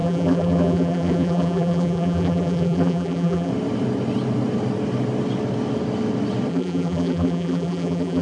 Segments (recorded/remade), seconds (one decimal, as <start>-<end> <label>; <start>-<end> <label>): 0.0-3.5 remade; 3.5-6.5 recorded; 6.5-8.2 remade